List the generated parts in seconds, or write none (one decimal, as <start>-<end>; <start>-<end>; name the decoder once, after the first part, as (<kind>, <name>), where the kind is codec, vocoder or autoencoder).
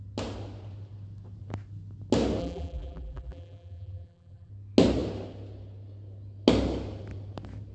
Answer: 2.4-4.5 (vocoder, BigVGAN v2)